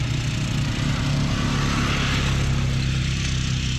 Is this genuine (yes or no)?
yes